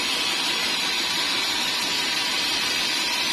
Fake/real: fake